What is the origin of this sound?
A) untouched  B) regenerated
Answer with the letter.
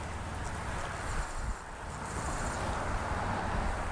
A